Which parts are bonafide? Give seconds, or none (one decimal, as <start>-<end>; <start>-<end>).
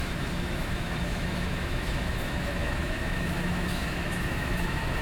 none